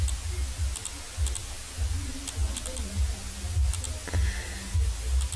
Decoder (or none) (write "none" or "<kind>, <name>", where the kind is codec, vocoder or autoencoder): none